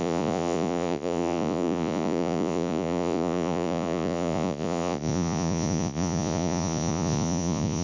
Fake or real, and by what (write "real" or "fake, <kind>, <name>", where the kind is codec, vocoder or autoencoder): fake, vocoder, Vocos